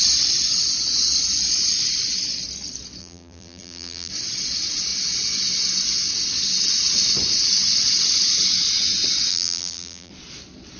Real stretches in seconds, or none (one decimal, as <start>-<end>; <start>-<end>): 0.0-3.0; 4.1-9.3; 10.1-10.8